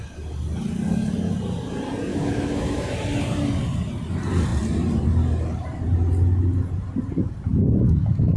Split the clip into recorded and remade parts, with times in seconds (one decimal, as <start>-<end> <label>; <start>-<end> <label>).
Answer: 0.0-2.1 recorded; 2.1-2.9 remade; 2.9-7.5 recorded; 7.5-8.4 remade